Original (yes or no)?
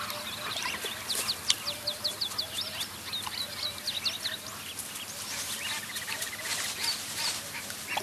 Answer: yes